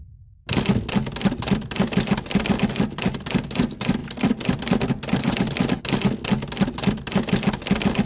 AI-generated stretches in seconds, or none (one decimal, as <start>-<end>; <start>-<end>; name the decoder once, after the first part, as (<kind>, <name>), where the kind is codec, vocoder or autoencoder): none